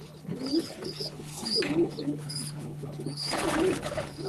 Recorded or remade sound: remade